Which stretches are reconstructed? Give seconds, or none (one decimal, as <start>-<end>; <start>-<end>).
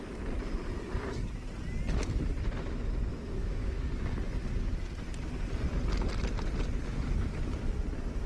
3.1-3.8